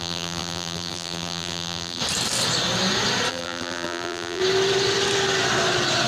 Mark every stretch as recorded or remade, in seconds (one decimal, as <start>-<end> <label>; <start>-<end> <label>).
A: 0.0-2.0 remade; 2.0-3.3 recorded; 3.3-4.4 remade; 4.4-6.1 recorded